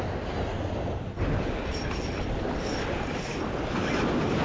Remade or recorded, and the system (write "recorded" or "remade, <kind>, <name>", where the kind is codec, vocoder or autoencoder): recorded